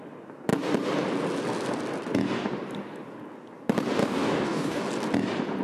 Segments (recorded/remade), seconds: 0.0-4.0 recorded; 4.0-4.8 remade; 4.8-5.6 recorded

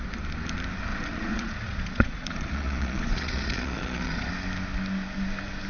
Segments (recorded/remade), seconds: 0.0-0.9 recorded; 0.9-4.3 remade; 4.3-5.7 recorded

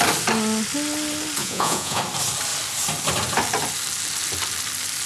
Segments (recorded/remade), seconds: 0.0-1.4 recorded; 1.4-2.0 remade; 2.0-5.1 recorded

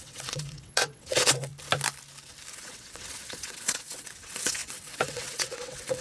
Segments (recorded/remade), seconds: 0.0-1.5 remade; 1.5-2.5 recorded; 2.5-6.0 remade